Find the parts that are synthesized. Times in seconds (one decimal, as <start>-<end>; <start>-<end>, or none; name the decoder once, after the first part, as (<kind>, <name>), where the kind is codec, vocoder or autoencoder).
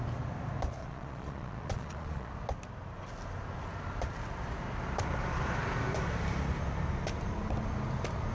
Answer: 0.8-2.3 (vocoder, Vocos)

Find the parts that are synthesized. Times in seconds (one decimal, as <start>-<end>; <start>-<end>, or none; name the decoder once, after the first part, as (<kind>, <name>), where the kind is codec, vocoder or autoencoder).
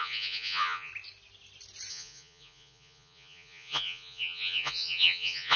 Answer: 0.0-0.9 (vocoder, Vocos); 1.9-5.6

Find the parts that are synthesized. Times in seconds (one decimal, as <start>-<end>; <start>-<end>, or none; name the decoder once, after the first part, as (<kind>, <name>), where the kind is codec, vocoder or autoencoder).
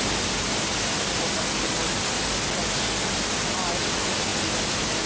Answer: none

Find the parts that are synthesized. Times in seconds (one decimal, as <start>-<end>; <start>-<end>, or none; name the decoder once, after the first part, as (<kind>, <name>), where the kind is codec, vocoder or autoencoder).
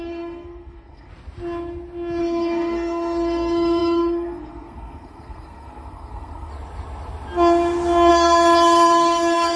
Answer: 0.0-1.1 (codec, SNAC); 2.2-6.5; 8.1-9.6